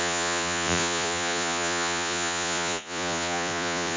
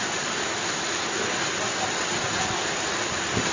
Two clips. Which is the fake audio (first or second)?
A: first